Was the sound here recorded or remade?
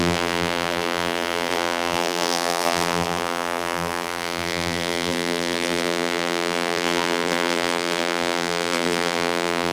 remade